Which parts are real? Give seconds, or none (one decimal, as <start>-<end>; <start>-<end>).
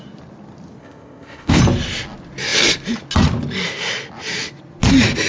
0.0-0.8; 1.6-5.3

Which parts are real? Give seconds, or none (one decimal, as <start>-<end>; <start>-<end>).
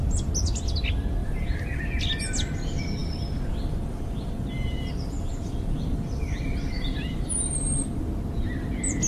0.0-1.2; 1.8-3.0; 8.0-9.1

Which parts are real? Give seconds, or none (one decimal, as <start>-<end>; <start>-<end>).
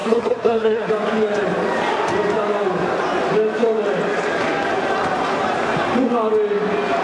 0.9-7.0